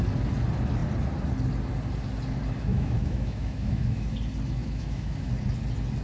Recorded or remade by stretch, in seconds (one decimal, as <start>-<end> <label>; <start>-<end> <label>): 0.0-2.7 recorded; 2.7-4.1 remade; 4.1-4.6 recorded; 4.6-5.3 remade; 5.3-6.0 recorded